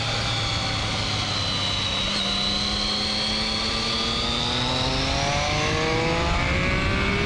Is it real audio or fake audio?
real